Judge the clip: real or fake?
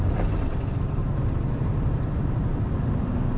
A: fake